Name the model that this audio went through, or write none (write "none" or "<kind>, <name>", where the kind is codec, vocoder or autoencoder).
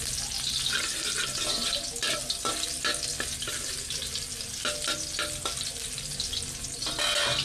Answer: none